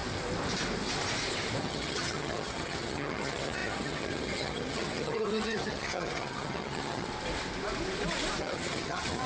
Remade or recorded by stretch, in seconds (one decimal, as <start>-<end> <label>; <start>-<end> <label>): 0.0-1.6 recorded; 1.6-7.1 remade; 7.1-8.4 recorded; 8.4-9.3 remade